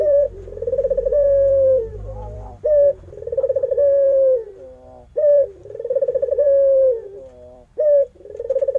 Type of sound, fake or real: fake